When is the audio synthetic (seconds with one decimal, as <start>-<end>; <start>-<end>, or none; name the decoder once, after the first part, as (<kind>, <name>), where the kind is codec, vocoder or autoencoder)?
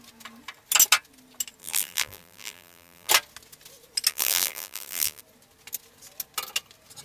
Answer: 1.6-3.1 (vocoder, BigVGAN v2); 4.1-5.2